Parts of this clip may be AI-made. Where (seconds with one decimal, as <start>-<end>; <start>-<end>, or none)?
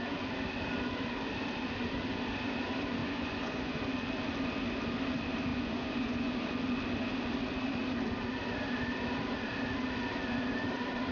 3.0-3.8; 5.5-6.3